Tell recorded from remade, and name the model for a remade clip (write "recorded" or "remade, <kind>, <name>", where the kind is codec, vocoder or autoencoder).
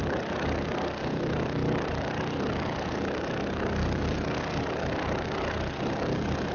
remade, codec, DAC